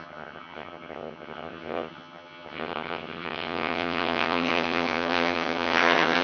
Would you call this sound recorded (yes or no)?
no